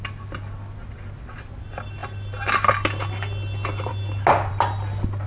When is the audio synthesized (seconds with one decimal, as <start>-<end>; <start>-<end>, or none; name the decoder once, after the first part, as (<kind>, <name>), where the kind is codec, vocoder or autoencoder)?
none